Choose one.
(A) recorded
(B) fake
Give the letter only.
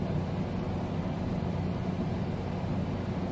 A